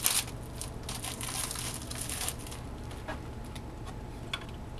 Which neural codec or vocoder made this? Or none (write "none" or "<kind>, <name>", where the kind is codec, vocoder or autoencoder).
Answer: none